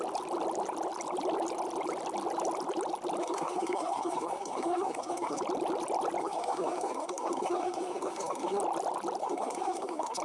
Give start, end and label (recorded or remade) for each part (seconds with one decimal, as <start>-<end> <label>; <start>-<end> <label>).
0.0-3.2 recorded; 3.2-5.4 remade; 5.4-6.2 recorded; 6.2-8.6 remade; 8.6-9.2 recorded; 9.2-10.2 remade